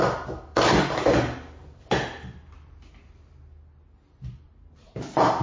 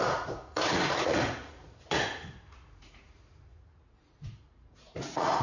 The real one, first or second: first